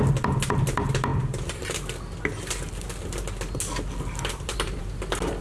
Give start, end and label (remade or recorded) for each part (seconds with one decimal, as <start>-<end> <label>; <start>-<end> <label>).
0.0-1.1 remade; 1.1-4.3 recorded; 4.3-5.4 remade